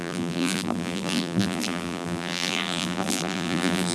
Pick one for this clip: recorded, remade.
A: remade